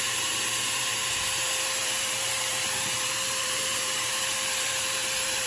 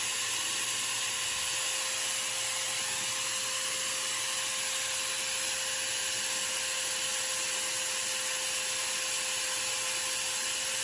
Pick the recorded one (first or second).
second